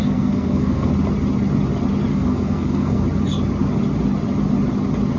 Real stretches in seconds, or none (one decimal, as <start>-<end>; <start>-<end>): 0.9-2.1; 3.0-5.2